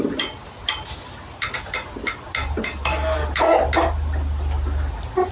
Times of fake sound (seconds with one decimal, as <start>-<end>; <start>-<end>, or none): none